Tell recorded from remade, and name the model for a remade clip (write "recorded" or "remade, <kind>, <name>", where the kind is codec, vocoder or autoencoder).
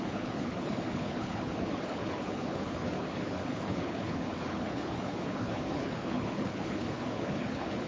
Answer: remade, codec, HILCodec